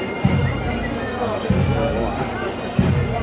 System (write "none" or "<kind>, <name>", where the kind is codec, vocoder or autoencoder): none